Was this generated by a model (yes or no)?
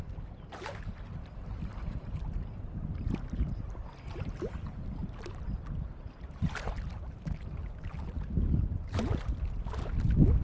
no